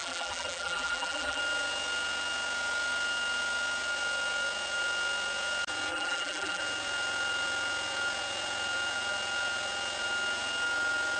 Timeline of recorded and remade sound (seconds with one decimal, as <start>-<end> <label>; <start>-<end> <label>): 0.0-1.4 remade; 1.4-5.9 recorded; 5.9-6.6 remade; 6.6-11.2 recorded